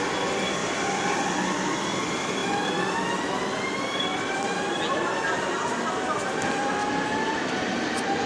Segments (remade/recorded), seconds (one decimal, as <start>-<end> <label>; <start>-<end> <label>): 0.0-0.6 recorded; 0.6-1.3 remade; 1.3-6.8 recorded; 6.8-7.9 remade; 7.9-8.3 recorded